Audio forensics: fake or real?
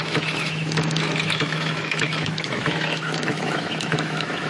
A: fake